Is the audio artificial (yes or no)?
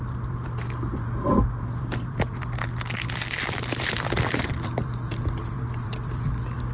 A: yes